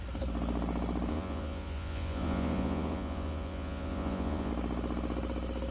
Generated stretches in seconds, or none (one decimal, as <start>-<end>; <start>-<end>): 1.1-4.5